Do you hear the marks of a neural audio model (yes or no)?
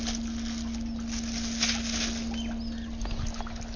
no